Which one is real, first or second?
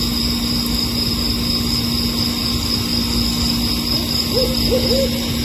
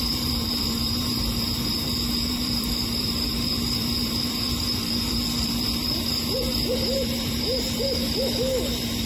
first